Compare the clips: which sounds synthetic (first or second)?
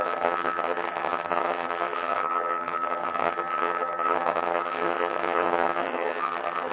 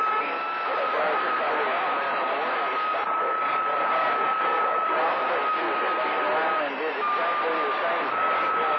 first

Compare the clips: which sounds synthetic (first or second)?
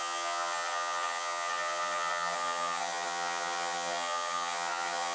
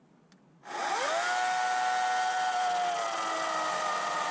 first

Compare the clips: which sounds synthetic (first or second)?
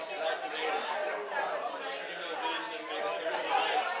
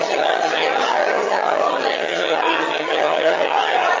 second